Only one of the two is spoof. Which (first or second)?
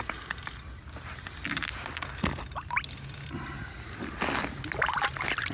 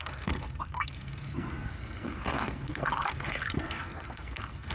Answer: second